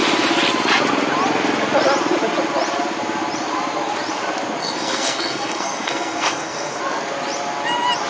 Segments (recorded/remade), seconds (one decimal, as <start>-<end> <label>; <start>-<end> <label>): 0.0-4.6 recorded; 4.6-6.8 remade; 6.8-8.1 recorded